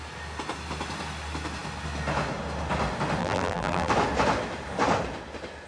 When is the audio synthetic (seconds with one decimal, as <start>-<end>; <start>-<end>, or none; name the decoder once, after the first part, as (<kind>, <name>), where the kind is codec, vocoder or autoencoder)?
3.2-3.9 (vocoder, BigVGAN v2)